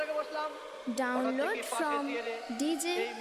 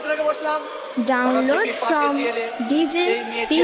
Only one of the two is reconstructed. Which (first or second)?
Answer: second